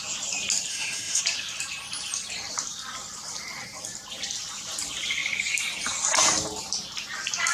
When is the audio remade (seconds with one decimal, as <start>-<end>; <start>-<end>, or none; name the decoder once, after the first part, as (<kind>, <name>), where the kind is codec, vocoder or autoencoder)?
0.7-1.2 (autoencoder, DAC-VAE)